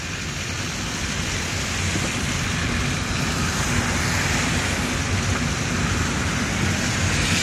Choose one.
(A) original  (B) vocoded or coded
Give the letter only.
A